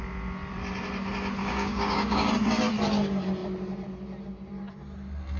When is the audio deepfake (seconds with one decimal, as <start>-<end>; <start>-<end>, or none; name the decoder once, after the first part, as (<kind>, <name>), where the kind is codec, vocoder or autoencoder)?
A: 1.4-2.3 (codec, DAC)